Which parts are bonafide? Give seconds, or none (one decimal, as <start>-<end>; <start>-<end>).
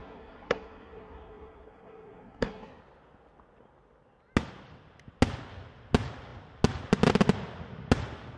2.8-8.4